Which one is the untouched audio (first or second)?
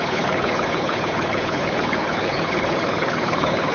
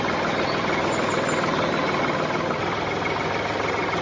second